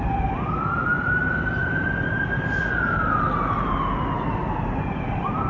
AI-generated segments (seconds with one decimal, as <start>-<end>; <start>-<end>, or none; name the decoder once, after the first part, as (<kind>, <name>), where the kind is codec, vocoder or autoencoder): none